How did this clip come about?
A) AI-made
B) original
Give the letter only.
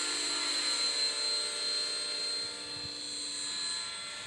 B